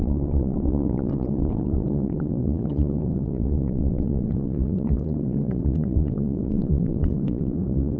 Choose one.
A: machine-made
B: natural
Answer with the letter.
A